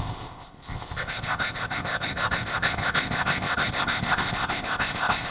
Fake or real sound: fake